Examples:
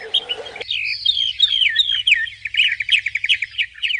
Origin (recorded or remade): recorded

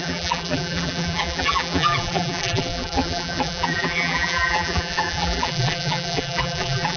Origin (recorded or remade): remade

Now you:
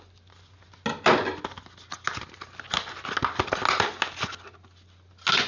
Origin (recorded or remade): recorded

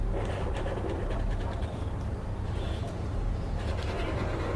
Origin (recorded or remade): remade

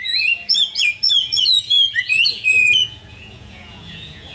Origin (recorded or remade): remade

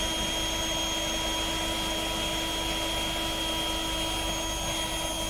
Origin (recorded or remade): recorded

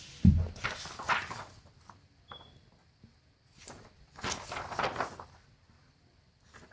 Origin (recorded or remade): recorded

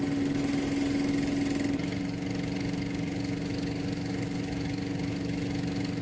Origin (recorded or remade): recorded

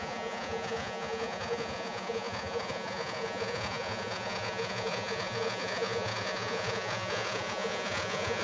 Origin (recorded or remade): remade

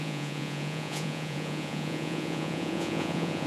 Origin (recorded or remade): remade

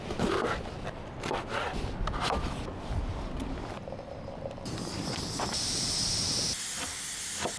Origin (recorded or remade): recorded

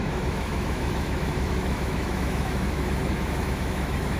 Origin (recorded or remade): remade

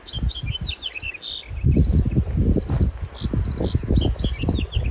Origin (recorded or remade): recorded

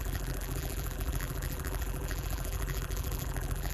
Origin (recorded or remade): remade